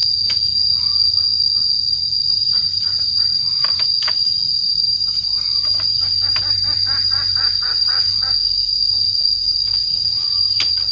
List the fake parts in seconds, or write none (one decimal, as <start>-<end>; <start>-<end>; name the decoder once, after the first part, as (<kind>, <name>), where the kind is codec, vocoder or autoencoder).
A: 2.3-8.1 (vocoder, BigVGAN v2); 9.3-10.9

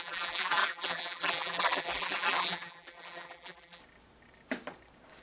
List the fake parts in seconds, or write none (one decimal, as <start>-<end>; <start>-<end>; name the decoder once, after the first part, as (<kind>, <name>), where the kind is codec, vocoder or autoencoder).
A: 0.0-3.8 (vocoder, BigVGAN v2)